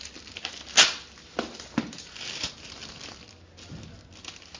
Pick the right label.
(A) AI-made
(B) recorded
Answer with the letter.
B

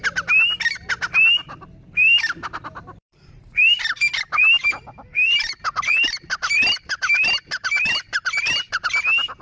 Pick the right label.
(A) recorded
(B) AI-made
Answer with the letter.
B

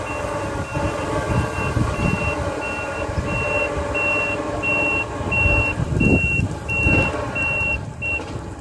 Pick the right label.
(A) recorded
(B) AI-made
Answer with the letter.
A